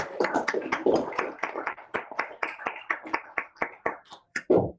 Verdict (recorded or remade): remade